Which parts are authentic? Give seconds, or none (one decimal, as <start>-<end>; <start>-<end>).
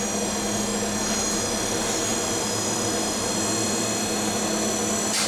0.0-5.3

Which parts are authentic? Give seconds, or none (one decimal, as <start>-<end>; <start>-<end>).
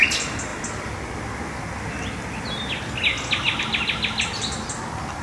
0.0-5.2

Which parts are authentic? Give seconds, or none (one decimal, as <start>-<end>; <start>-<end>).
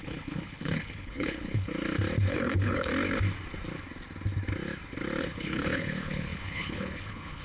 1.7-2.3; 2.9-5.2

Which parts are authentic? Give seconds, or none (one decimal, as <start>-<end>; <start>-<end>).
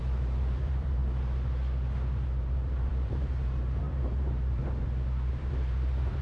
1.0-2.4; 4.6-5.3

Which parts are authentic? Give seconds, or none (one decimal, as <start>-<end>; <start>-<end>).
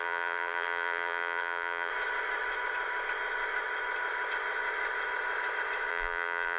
1.9-5.9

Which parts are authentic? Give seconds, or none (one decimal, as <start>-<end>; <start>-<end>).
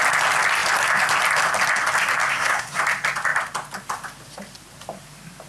0.0-2.3; 2.8-5.5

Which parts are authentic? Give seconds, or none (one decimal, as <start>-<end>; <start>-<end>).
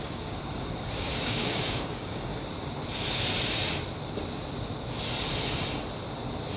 2.3-6.6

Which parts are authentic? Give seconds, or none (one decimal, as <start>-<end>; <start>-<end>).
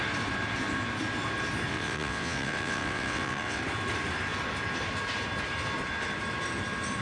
0.0-1.7; 3.6-7.0